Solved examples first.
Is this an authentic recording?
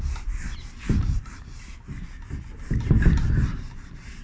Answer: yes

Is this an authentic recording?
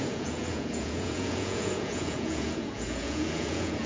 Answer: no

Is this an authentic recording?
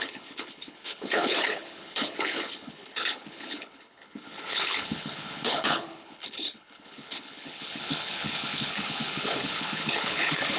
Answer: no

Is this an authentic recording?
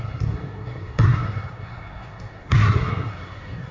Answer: no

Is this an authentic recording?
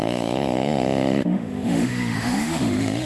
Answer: no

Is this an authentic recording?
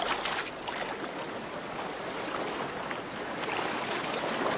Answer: yes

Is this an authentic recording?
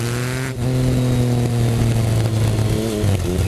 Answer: yes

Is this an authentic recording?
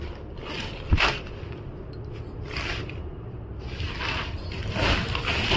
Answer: yes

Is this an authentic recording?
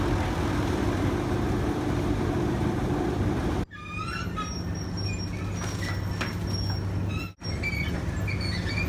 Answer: yes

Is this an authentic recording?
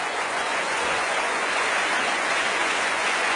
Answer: no